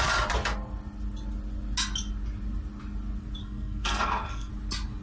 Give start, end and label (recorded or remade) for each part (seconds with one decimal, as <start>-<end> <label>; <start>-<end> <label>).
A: 0.0-3.4 recorded; 3.4-4.5 remade; 4.5-5.0 recorded